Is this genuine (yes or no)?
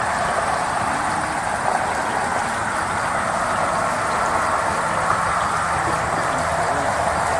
yes